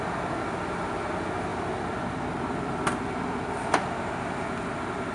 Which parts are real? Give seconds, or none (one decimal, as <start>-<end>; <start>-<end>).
0.0-5.1